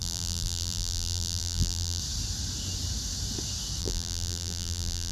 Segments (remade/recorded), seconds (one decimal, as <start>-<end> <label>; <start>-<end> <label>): 0.0-2.0 remade; 2.0-3.8 recorded; 3.8-5.1 remade